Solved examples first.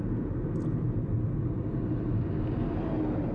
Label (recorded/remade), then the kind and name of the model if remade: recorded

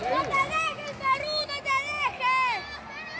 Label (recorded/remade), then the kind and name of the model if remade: recorded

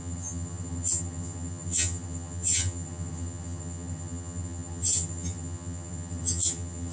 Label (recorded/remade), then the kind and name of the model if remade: remade, vocoder, HiFi-GAN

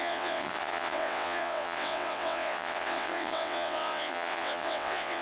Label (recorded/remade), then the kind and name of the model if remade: remade, vocoder, WaveNeXt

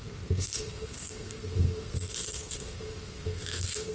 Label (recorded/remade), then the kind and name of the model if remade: remade, codec, SNAC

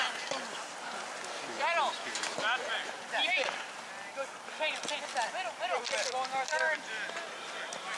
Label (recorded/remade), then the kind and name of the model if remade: recorded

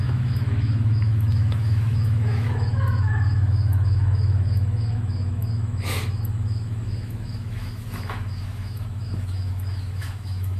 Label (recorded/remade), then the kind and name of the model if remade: remade, autoencoder, DAC-VAE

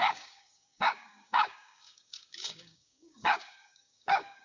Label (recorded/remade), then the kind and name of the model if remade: remade, codec, DAC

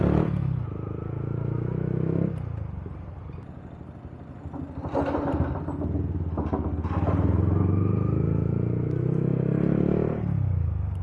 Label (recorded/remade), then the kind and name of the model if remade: recorded